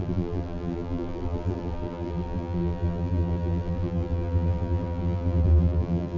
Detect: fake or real fake